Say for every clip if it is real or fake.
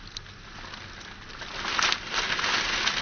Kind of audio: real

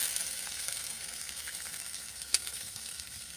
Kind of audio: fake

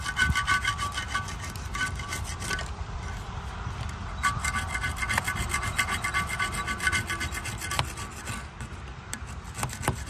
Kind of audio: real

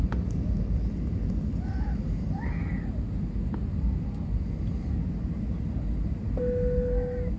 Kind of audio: real